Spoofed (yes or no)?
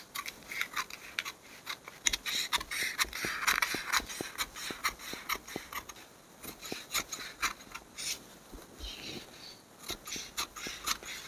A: no